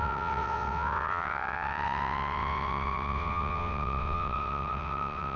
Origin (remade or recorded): remade